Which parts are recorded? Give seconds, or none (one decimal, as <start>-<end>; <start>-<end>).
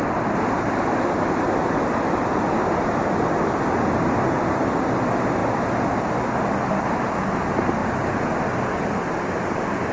0.0-9.9